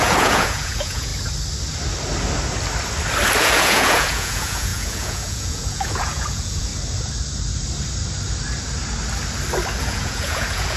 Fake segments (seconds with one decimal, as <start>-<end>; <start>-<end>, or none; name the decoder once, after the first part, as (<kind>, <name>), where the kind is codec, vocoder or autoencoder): 0.0-1.1 (vocoder, Vocos); 3.4-6.7; 9.8-10.8